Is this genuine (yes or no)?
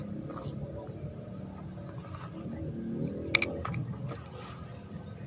yes